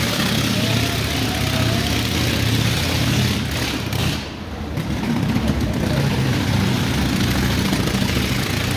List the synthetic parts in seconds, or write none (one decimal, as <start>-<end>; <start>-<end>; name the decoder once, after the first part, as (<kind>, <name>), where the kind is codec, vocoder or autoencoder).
4.0-6.5 (vocoder, BigVGAN v2)